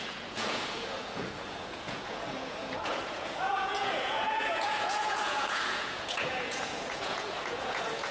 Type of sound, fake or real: fake